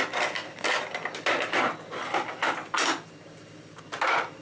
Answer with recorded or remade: recorded